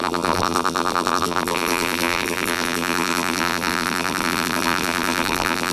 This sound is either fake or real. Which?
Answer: fake